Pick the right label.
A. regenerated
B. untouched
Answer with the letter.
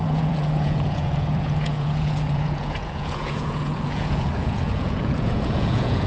A